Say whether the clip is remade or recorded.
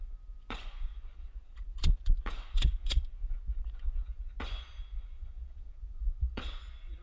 remade